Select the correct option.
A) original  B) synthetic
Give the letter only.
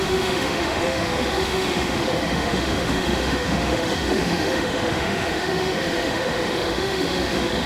B